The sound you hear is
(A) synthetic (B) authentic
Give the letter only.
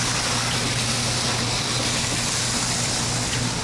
B